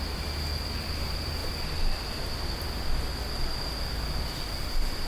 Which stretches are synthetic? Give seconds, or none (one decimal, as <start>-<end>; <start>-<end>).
none